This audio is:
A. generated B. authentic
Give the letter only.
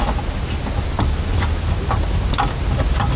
B